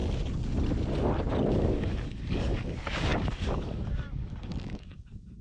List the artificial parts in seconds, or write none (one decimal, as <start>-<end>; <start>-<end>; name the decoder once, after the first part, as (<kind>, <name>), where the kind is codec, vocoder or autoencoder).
1.5-5.4 (codec, DAC)